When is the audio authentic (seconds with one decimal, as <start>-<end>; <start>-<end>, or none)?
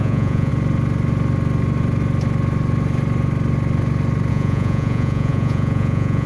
0.5-4.3